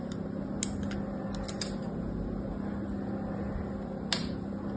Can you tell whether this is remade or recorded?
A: recorded